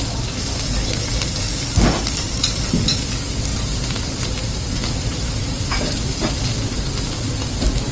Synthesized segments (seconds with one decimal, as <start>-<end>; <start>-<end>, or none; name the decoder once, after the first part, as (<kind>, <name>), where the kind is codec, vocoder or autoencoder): 3.5-6.4 (vocoder, BigVGAN v2)